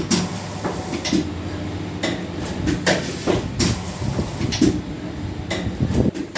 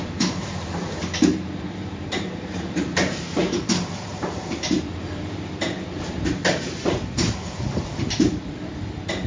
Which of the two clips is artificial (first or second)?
second